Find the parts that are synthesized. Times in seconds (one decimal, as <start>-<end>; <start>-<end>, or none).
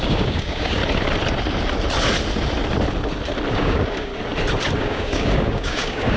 0.0-0.8; 3.5-4.1; 4.8-6.2